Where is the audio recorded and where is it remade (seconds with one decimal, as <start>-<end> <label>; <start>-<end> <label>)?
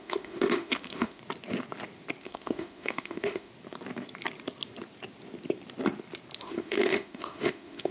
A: 0.0-1.2 remade; 1.2-2.2 recorded; 2.2-3.5 remade; 3.5-6.4 recorded; 6.4-7.9 remade